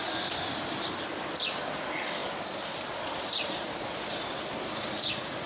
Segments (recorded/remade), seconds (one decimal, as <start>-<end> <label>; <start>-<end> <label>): 0.0-2.2 remade; 2.2-2.8 recorded; 2.8-5.5 remade